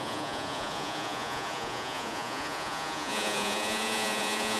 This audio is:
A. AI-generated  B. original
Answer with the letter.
A